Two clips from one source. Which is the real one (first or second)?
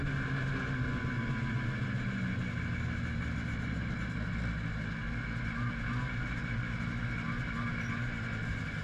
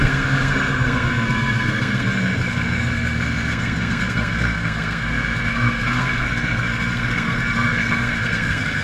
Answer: first